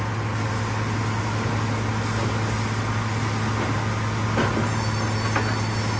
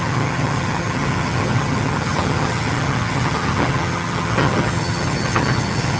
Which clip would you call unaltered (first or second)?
first